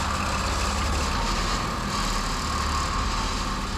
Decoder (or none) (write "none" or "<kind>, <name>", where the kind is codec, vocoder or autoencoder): none